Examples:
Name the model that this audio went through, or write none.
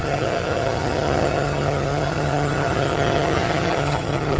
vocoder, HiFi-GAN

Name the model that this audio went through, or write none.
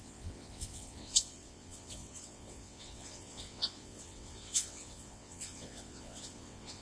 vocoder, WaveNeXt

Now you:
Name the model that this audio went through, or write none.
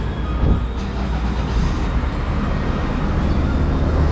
none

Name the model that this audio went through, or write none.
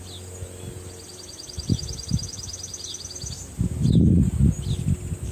none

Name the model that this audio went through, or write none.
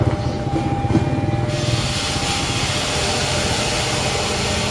none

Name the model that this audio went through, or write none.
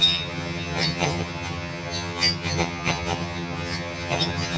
vocoder, HiFi-GAN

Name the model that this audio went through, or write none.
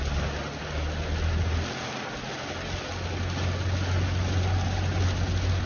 none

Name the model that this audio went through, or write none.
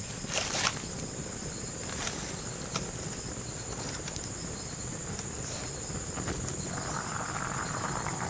none